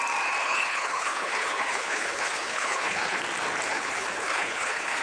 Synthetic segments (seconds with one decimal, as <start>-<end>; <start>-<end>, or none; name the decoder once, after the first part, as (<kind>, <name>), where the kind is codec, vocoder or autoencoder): 0.4-3.2 (codec, HILCodec); 3.7-5.0